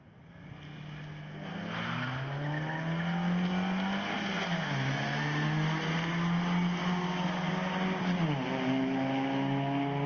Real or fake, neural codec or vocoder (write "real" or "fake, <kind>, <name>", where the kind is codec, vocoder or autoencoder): real